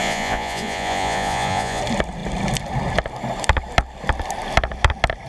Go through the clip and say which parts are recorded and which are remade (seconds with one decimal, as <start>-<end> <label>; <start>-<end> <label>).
0.0-1.8 remade; 1.8-5.3 recorded